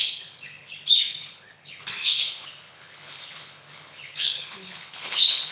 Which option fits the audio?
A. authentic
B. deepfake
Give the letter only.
B